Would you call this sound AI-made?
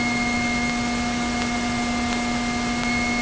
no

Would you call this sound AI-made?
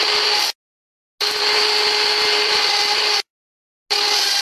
no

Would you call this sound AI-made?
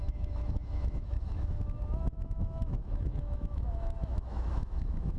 yes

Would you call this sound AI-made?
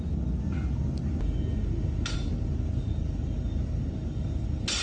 no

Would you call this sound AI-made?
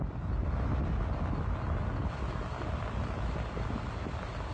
no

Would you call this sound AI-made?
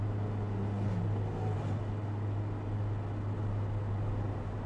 no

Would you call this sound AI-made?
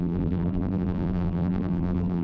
yes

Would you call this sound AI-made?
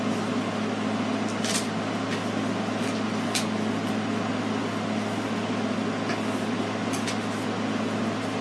no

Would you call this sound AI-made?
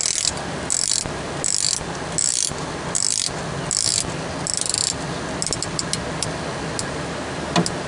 no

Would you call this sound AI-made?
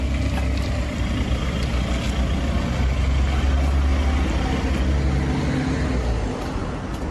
no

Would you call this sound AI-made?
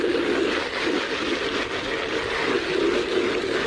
no